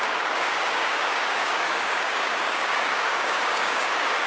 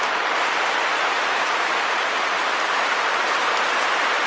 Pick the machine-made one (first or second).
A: first